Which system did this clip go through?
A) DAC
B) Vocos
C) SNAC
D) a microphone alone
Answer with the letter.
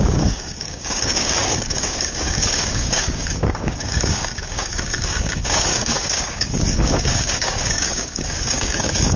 A